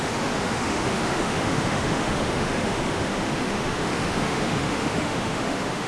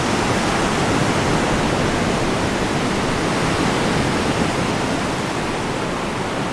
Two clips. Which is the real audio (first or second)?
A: second